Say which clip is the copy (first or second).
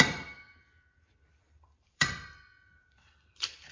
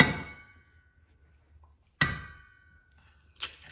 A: first